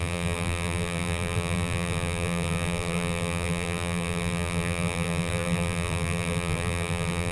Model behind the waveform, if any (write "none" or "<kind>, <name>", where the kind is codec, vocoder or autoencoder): vocoder, BigVGAN v2